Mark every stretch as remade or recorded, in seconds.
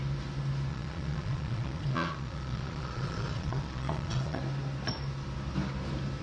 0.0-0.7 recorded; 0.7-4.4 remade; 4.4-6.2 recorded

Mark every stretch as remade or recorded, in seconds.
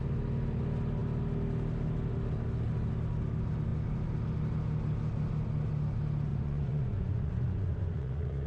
0.0-6.3 recorded; 6.3-8.5 remade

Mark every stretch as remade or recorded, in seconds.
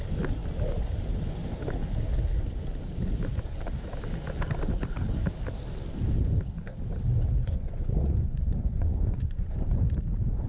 0.0-7.4 recorded; 7.4-9.8 remade; 9.8-10.5 recorded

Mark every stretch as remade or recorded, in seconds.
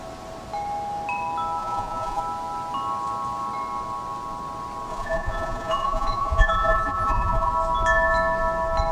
0.0-1.6 recorded; 1.6-2.2 remade; 2.2-4.9 recorded; 4.9-7.5 remade; 7.5-8.9 recorded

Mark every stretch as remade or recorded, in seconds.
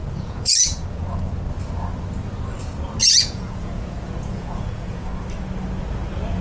0.0-1.4 remade; 1.4-3.0 recorded; 3.0-5.1 remade; 5.1-6.4 recorded